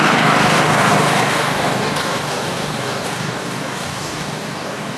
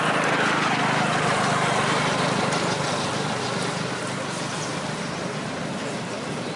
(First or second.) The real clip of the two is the second